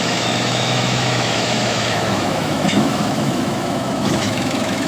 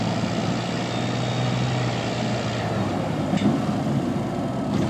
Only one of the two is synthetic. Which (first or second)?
first